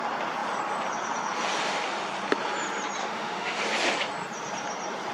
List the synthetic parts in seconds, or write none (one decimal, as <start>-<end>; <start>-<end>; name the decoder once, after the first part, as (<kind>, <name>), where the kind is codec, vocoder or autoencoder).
3.0-3.6 (autoencoder, DAC-VAE)